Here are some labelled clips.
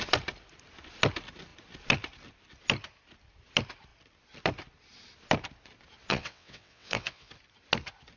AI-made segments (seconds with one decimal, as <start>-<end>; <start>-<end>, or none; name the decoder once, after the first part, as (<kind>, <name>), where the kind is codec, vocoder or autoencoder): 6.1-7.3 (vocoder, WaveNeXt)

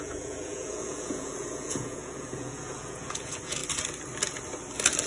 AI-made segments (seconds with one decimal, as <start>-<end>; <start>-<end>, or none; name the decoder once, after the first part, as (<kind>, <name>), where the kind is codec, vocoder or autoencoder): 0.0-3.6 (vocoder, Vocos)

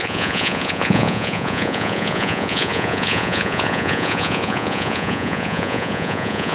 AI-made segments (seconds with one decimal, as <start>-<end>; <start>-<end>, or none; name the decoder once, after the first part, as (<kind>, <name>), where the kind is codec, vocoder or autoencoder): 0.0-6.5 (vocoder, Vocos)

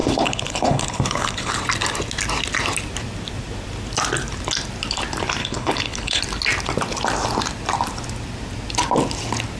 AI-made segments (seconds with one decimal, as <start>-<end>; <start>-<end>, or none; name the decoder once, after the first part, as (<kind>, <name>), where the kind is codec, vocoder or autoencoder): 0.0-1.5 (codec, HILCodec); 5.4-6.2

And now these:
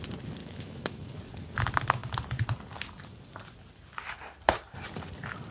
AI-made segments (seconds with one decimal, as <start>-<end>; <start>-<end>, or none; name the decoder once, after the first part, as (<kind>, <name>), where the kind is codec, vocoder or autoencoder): 0.4-1.1 (autoencoder, DAC-VAE)

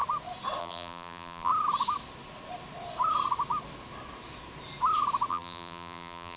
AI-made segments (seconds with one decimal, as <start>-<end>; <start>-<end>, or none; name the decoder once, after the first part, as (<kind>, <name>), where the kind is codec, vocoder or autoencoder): 0.6-1.5 (vocoder, BigVGAN v2); 5.3-6.4

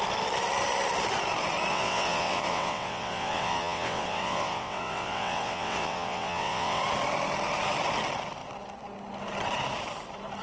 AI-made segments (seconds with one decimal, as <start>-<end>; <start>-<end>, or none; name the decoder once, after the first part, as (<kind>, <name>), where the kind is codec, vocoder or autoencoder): 1.7-6.8 (vocoder, WaveNeXt)